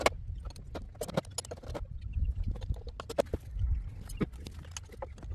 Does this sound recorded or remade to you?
recorded